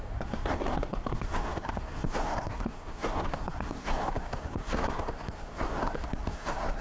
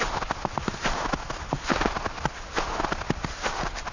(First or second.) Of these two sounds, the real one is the second